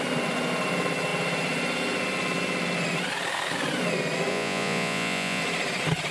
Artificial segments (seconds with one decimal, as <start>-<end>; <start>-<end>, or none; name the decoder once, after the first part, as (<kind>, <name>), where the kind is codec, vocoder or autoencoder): 4.3-5.4 (vocoder, Vocos)